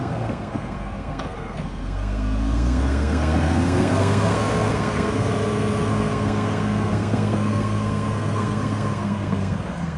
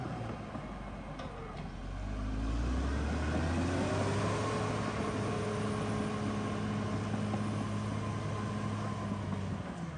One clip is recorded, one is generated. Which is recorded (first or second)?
second